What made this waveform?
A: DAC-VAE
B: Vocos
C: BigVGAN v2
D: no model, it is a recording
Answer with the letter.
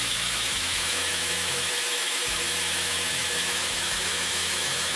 A